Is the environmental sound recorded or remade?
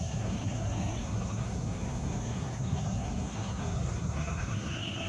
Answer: remade